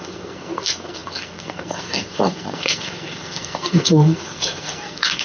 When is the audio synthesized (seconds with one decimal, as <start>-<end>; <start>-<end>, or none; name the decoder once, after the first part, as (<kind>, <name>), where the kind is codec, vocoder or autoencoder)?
0.0-5.2 (codec, SNAC)